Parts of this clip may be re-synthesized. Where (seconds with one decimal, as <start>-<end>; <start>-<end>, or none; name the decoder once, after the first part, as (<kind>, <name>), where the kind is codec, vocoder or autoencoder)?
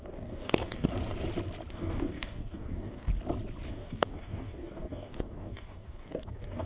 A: 0.0-0.9 (codec, DAC); 1.7-3.1; 3.7-6.7